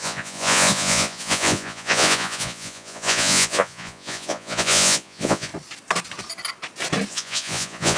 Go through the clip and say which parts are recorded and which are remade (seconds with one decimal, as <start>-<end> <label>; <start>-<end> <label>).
0.0-5.5 remade; 5.5-7.1 recorded; 7.1-8.0 remade